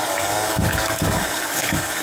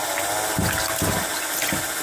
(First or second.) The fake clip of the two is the first